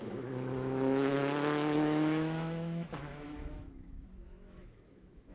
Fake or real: fake